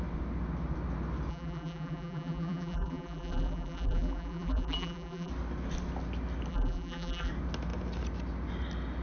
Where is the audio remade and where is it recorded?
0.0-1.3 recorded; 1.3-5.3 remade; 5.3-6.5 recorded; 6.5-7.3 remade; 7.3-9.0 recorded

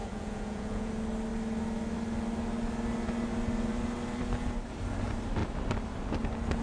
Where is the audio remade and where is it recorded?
0.0-0.9 remade; 0.9-6.6 recorded

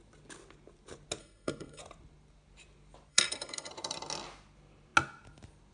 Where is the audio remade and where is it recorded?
0.0-1.2 recorded; 1.2-1.8 remade; 1.8-3.1 recorded; 3.1-3.7 remade; 3.7-5.7 recorded

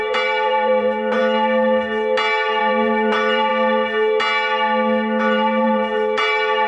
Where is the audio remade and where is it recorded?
0.0-1.2 remade; 1.2-2.6 recorded; 2.6-3.5 remade; 3.5-5.2 recorded; 5.2-6.7 remade